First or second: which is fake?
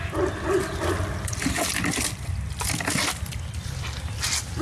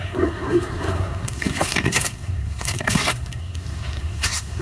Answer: second